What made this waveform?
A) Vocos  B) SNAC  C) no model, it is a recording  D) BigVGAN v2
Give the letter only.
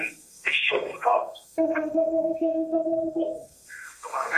B